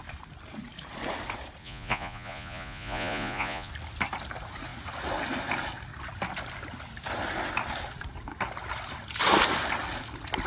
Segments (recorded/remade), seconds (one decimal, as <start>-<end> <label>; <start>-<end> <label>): 0.0-1.6 recorded; 1.6-3.7 remade; 3.7-10.5 recorded